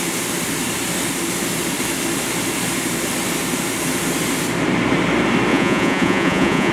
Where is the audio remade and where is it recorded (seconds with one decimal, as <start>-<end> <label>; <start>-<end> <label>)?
0.0-5.5 recorded; 5.5-6.7 remade